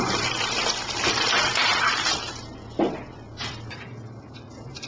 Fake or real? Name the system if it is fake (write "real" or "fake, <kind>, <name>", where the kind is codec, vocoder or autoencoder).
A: fake, vocoder, BigVGAN v2